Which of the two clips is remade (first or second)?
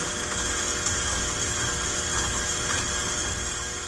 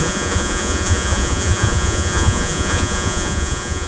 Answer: second